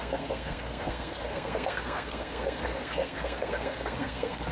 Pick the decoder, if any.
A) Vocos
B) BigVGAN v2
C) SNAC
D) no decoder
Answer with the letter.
C